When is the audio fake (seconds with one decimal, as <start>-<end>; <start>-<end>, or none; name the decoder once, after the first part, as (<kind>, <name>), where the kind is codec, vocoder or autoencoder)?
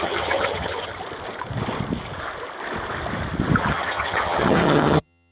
0.0-0.9 (vocoder, HiFi-GAN); 3.6-5.3